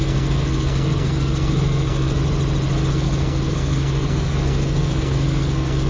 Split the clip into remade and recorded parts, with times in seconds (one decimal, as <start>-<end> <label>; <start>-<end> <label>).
0.0-2.2 remade; 2.2-2.9 recorded; 2.9-5.9 remade